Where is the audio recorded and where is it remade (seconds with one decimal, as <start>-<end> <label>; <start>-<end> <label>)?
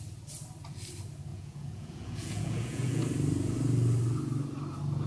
0.0-1.3 recorded; 1.3-3.0 remade; 3.0-5.1 recorded